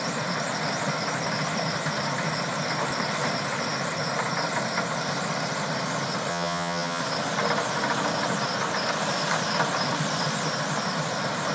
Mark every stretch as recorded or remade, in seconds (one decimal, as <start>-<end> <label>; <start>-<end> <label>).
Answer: 0.0-6.3 recorded; 6.3-7.0 remade; 7.0-11.5 recorded